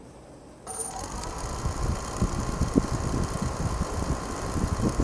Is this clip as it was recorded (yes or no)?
yes